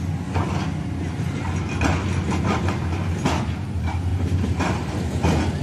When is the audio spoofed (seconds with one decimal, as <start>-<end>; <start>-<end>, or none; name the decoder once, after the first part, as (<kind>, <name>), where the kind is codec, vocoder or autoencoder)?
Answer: 4.1-4.9 (vocoder, BigVGAN v2)